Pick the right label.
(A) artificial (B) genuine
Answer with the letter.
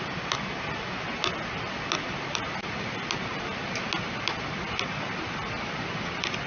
B